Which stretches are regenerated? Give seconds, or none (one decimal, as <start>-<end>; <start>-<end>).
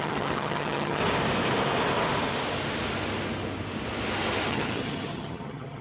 0.0-1.0; 4.5-5.8